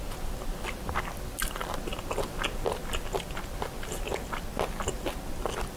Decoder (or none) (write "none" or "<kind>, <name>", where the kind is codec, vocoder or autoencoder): none